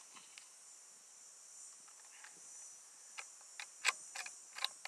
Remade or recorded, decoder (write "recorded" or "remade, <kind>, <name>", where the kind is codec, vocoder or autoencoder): recorded